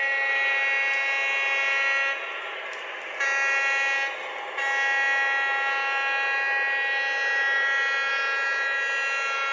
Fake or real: real